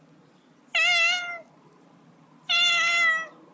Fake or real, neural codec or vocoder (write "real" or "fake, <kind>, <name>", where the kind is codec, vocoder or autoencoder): real